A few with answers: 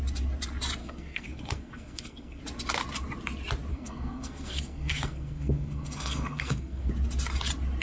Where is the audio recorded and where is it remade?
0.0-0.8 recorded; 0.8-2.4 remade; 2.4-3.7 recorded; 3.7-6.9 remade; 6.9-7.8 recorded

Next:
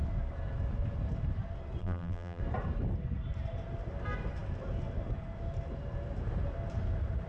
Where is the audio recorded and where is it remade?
0.0-1.8 recorded; 1.8-2.4 remade; 2.4-7.3 recorded

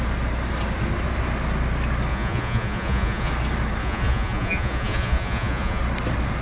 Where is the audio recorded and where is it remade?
0.0-2.1 recorded; 2.1-3.3 remade; 3.3-3.8 recorded; 3.8-5.8 remade; 5.8-6.4 recorded

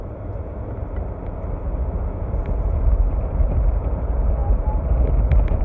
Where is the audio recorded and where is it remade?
0.0-5.6 recorded

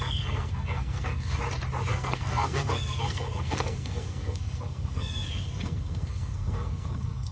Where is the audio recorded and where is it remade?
0.0-1.4 remade; 1.4-1.9 recorded; 1.9-7.3 remade